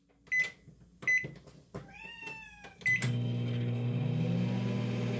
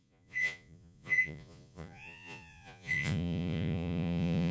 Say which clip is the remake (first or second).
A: second